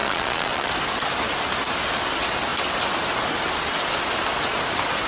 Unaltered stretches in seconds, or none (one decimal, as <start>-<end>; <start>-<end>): 0.7-5.1